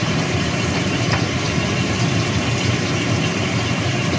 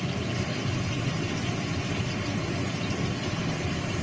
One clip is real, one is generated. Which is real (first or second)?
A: second